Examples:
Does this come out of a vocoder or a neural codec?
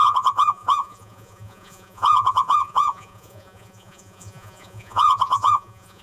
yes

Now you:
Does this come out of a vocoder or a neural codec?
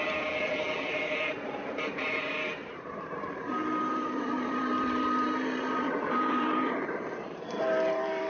yes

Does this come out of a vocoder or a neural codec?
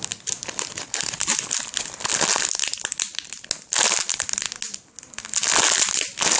no